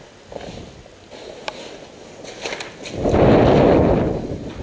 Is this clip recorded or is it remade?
recorded